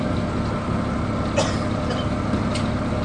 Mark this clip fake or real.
real